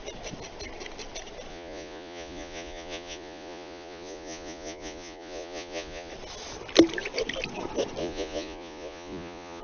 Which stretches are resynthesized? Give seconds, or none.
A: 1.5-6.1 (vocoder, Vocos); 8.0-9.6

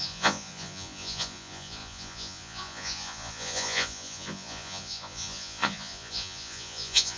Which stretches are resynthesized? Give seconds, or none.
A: 0.0-7.2 (vocoder, Vocos)

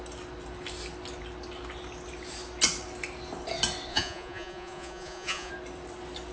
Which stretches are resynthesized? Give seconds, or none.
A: 3.9-5.5 (vocoder, Vocos)

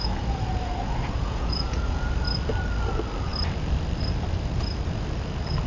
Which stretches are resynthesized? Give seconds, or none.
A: 0.0-2.1 (vocoder, Vocos)

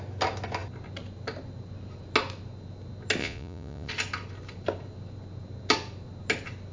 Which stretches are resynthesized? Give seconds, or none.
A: 3.2-3.9 (vocoder, Vocos)

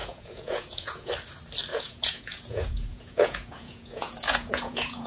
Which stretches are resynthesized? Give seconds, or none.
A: 0.0-1.1 (vocoder, Vocos); 1.7-5.1